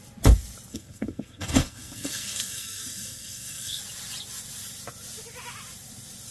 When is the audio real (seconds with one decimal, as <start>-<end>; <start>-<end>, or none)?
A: 0.0-0.7; 3.8-6.3